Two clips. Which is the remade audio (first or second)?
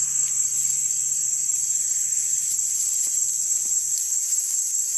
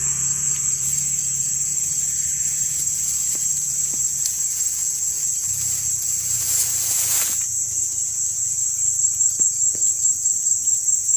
second